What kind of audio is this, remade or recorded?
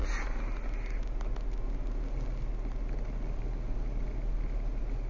recorded